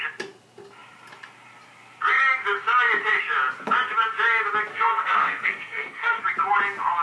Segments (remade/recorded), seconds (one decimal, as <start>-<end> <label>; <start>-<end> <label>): 0.0-4.7 recorded; 4.7-6.2 remade; 6.2-7.0 recorded